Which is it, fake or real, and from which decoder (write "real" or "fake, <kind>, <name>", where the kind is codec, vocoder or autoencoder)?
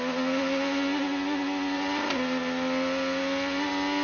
real